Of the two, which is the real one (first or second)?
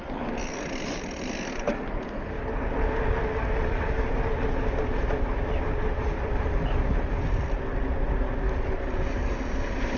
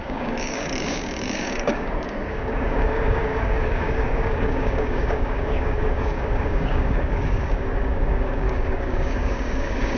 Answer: first